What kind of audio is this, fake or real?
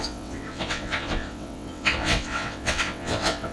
fake